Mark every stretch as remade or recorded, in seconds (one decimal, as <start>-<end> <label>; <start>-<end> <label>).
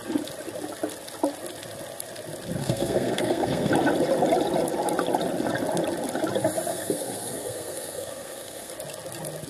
0.0-2.6 recorded; 2.6-3.7 remade; 3.7-6.7 recorded; 6.7-8.7 remade; 8.7-9.5 recorded